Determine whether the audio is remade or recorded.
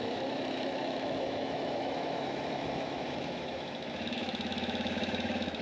remade